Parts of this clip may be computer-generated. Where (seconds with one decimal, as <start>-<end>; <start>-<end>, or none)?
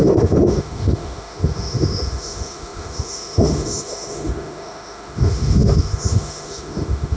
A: 0.0-7.2